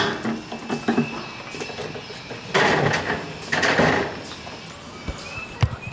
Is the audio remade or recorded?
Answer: recorded